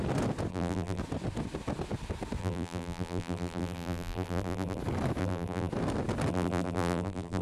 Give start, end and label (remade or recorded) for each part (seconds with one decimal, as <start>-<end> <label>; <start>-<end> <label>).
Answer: 0.0-0.5 recorded; 0.5-1.0 remade; 1.0-2.4 recorded; 2.4-4.8 remade; 4.8-5.2 recorded; 5.2-5.7 remade; 5.7-6.3 recorded; 6.3-7.4 remade